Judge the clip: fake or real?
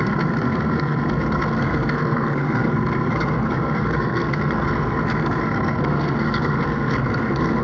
fake